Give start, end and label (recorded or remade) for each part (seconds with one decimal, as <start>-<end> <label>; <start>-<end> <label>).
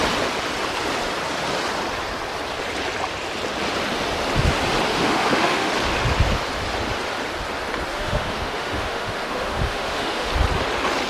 0.0-4.9 recorded; 4.9-5.7 remade; 5.7-7.9 recorded; 7.9-10.3 remade; 10.3-11.1 recorded